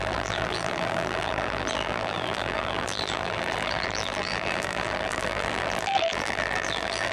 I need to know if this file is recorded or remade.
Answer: remade